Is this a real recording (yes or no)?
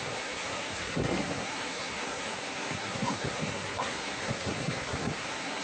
no